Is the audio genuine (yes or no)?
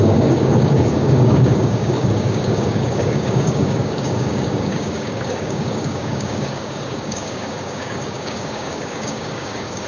no